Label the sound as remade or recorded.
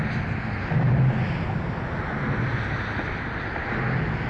recorded